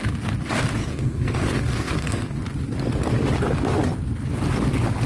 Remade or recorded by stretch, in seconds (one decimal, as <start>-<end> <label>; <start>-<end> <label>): 0.0-0.8 recorded; 0.8-2.4 remade; 2.4-5.1 recorded